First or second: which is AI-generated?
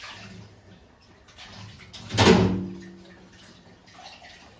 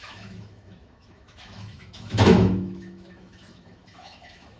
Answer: second